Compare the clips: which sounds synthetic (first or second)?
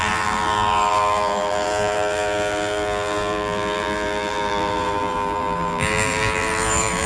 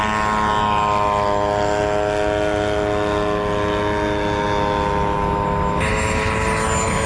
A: first